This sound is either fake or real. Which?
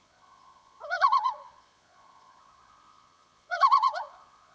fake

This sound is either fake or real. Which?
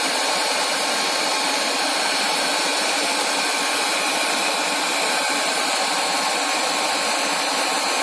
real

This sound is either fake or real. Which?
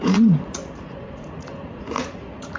fake